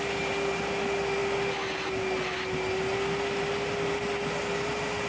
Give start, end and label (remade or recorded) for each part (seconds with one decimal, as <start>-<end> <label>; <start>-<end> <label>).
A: 0.0-5.1 recorded